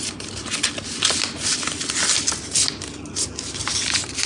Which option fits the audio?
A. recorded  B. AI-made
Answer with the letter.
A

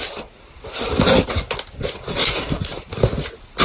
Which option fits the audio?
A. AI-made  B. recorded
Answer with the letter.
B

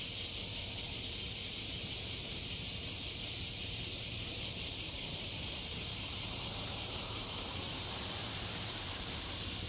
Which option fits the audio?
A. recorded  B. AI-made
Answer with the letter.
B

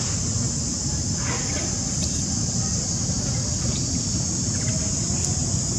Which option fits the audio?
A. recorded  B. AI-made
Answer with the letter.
A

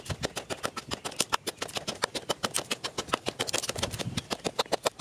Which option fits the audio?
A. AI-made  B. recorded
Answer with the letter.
B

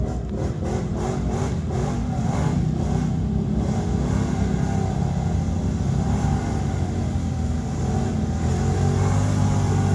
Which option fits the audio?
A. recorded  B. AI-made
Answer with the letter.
A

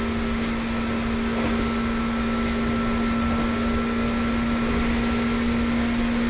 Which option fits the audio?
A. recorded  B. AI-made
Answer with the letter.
A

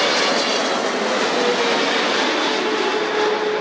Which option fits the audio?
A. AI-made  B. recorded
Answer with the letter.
B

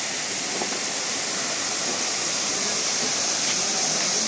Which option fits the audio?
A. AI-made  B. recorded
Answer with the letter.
B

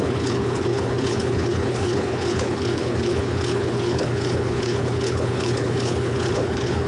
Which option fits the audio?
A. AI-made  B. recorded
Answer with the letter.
A